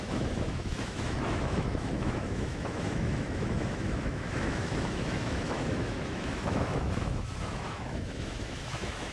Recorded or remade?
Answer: remade